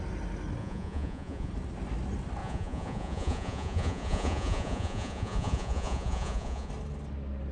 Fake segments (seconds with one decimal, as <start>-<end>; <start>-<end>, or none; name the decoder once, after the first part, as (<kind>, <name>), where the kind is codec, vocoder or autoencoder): 0.6-1.5 (vocoder, Vocos); 2.4-6.7